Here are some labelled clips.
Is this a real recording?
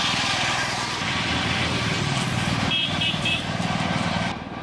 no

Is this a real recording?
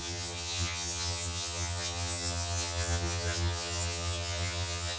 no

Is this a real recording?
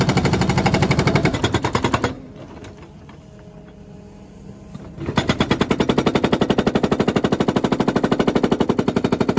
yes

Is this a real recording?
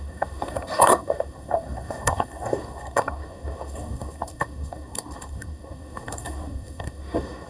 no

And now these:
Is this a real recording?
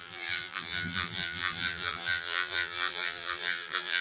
no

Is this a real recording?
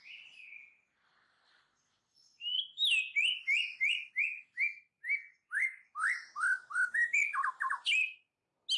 yes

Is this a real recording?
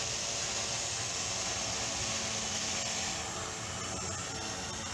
yes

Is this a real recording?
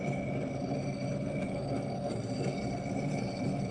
yes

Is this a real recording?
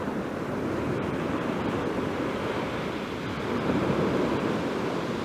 yes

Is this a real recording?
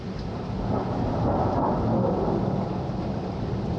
yes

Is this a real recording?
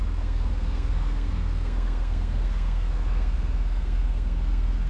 no